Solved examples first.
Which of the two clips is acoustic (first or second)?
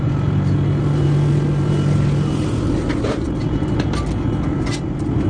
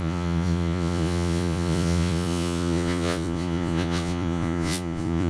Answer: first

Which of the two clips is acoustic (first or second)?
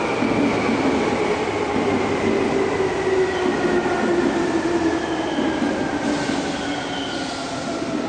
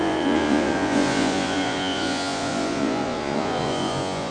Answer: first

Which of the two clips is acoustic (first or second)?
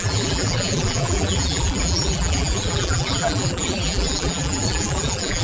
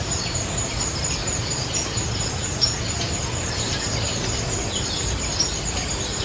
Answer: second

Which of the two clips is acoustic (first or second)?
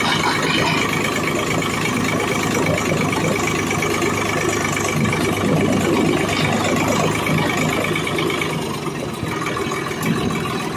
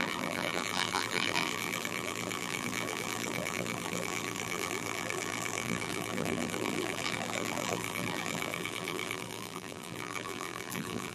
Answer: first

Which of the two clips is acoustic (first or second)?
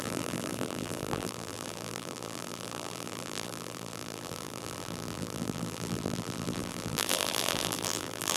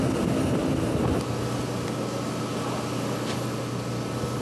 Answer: second